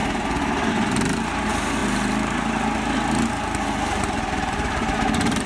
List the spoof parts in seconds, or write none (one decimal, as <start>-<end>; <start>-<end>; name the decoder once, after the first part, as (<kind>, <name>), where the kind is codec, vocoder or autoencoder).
3.9-4.9 (vocoder, BigVGAN v2)

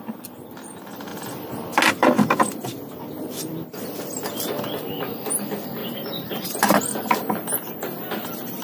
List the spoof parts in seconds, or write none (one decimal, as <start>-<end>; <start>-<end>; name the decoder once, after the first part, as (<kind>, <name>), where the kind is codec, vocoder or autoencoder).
5.8-6.8 (vocoder, BigVGAN v2); 7.2-8.1

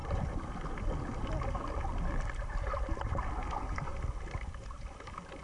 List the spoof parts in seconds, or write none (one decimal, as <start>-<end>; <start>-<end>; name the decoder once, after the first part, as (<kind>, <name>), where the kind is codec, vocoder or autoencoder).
none

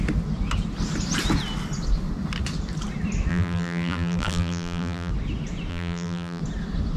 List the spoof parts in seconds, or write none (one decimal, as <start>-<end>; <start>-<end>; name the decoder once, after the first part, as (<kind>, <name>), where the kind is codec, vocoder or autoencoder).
3.3-5.1 (vocoder, BigVGAN v2); 5.7-6.4

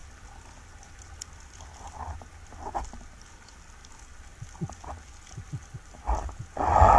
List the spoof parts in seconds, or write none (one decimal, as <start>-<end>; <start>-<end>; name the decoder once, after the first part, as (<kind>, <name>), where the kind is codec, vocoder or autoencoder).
none